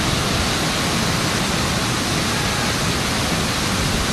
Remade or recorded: recorded